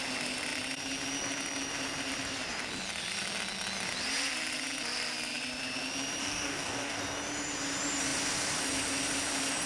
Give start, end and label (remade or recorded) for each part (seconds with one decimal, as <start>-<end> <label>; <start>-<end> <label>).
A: 0.0-6.2 recorded; 6.2-7.0 remade; 7.0-9.7 recorded